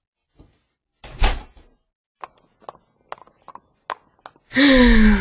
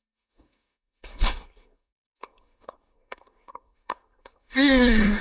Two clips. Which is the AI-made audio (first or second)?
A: second